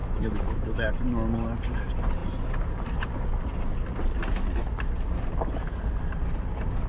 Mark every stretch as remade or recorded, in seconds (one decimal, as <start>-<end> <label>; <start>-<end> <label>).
0.0-0.9 remade; 0.9-6.9 recorded